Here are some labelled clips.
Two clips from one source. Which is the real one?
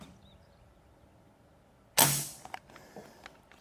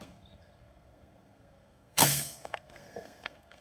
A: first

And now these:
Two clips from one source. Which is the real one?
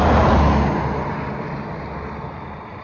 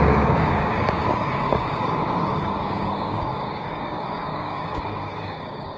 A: first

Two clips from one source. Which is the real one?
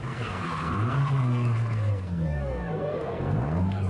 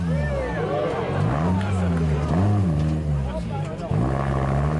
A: second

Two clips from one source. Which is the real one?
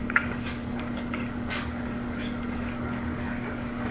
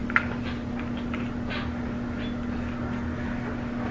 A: second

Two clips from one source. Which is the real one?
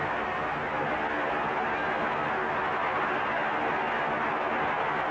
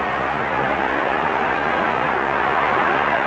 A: first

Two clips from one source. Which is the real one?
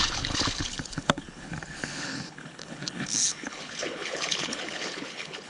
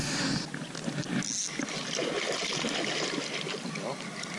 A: second